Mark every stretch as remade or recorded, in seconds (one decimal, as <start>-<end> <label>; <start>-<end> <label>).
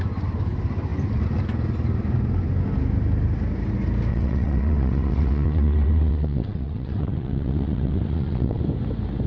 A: 0.0-4.1 recorded; 4.1-8.6 remade; 8.6-9.3 recorded